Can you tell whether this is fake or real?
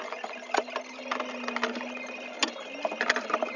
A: real